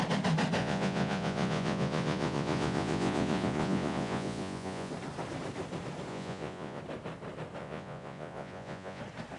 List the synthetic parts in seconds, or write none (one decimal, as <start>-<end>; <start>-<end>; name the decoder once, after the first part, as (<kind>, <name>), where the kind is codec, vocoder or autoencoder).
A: 0.6-4.9 (vocoder, Vocos); 6.1-6.8; 7.6-9.0